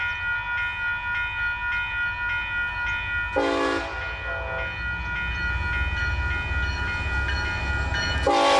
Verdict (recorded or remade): recorded